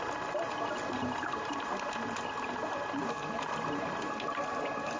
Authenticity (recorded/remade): recorded